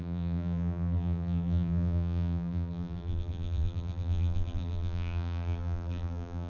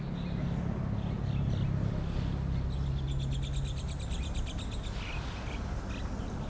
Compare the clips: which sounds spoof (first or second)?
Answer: first